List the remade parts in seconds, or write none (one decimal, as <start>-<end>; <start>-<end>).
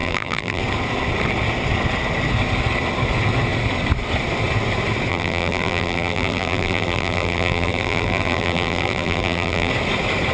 0.0-0.6; 5.1-9.7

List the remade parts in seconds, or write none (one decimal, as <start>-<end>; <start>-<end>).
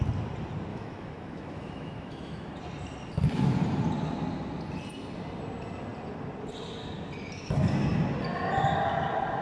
0.7-2.5